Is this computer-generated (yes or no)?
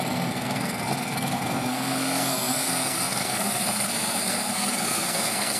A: yes